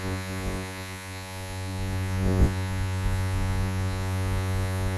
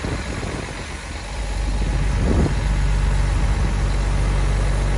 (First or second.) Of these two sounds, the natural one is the second